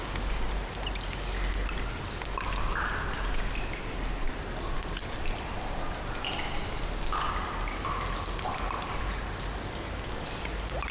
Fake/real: real